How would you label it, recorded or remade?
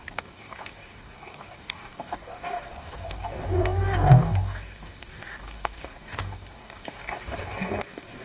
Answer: remade